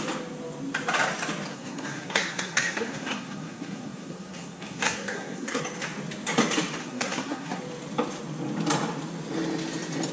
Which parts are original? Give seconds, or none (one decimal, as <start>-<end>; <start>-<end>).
0.0-1.5; 5.6-6.8; 7.6-10.1

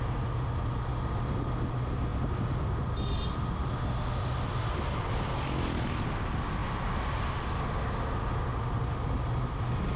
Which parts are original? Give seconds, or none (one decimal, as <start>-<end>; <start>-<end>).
0.0-10.0